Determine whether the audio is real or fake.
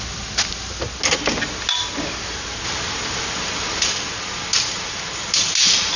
real